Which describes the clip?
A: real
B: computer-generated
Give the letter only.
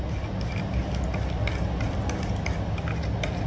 A